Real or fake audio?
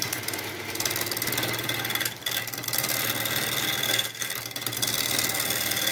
real